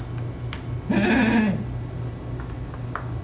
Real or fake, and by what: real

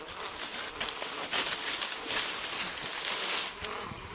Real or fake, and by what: real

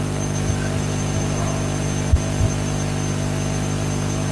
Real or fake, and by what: real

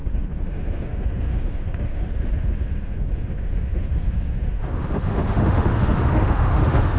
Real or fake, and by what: fake, autoencoder, DAC-VAE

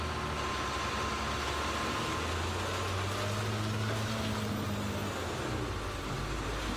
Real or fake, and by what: real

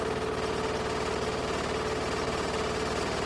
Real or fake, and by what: real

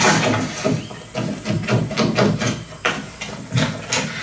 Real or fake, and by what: real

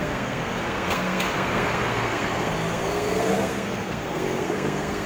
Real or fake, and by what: fake, codec, SNAC